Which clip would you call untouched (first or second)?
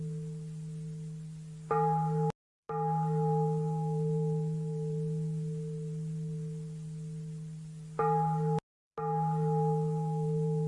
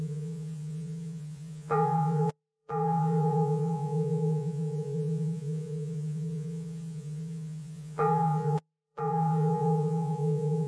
first